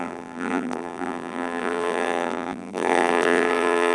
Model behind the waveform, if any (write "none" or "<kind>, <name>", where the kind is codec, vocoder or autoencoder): vocoder, BigVGAN v2